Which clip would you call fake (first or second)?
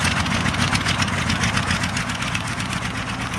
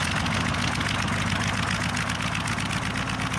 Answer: first